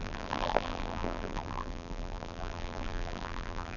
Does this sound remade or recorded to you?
remade